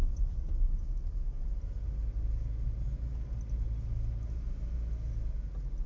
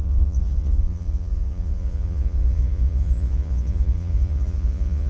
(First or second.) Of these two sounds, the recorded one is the first